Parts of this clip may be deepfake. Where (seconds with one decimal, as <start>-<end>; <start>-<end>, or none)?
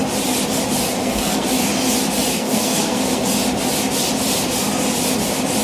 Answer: 1.0-1.5; 2.3-3.3